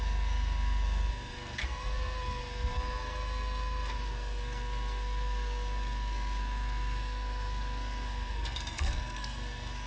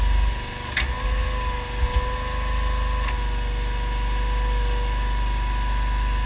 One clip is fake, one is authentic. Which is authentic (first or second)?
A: second